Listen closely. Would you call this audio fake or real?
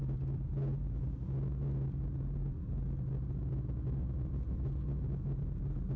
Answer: real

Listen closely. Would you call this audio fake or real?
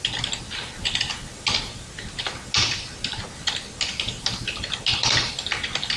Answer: real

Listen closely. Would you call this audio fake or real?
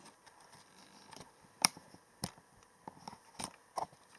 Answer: fake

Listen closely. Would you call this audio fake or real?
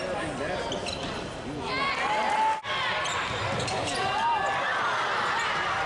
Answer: real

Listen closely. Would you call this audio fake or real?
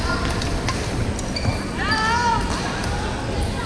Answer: real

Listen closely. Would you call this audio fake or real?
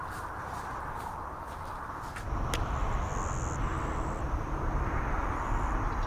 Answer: real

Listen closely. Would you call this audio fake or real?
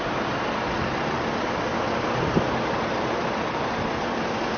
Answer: real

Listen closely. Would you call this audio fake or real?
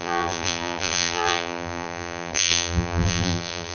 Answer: fake